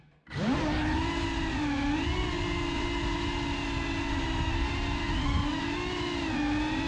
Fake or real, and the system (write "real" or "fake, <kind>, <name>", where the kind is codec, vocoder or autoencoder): real